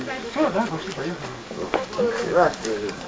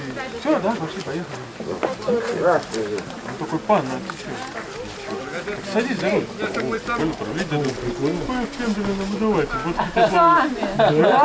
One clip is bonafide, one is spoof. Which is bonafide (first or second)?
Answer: second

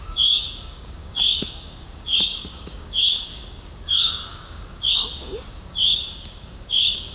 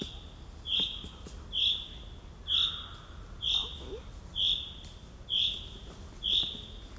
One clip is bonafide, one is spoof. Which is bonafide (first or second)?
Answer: second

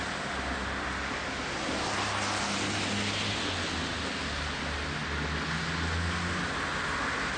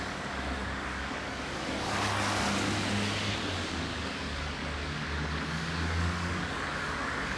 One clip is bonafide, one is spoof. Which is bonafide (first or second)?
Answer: first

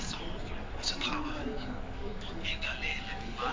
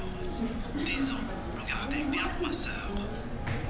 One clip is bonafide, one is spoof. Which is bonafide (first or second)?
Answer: second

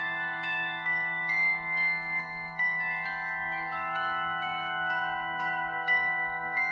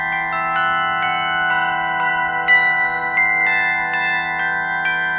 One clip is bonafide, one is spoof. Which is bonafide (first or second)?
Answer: second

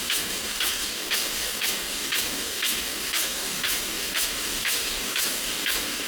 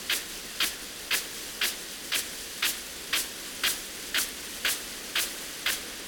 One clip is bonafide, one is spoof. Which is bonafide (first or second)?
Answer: second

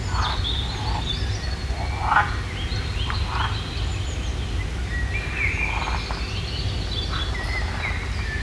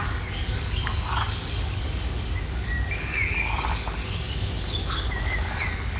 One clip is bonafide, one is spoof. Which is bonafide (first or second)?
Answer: first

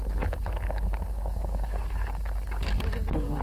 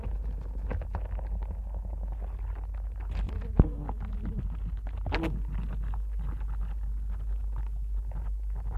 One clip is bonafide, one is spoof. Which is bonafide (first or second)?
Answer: second